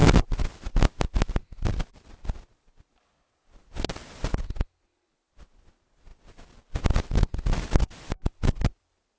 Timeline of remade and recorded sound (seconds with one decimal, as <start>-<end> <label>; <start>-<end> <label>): 0.0-9.2 recorded